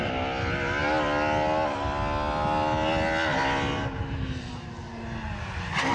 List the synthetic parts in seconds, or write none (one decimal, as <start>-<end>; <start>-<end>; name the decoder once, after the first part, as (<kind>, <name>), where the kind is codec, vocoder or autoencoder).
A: none